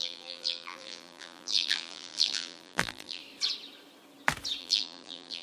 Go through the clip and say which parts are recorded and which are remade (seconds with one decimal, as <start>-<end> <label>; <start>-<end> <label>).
0.0-3.2 remade; 3.2-4.6 recorded; 4.6-5.4 remade